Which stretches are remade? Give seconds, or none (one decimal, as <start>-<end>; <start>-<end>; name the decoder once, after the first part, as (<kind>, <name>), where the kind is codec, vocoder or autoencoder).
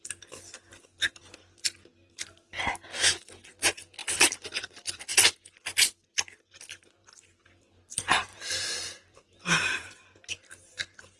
8.3-10.3 (vocoder, BigVGAN v2)